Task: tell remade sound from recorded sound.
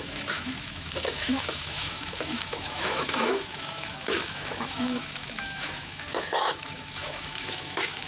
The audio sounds remade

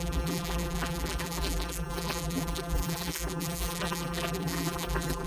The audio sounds remade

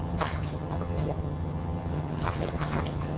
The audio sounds remade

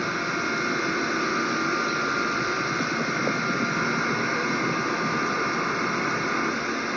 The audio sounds recorded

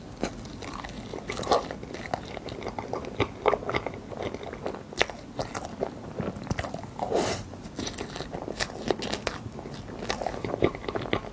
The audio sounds recorded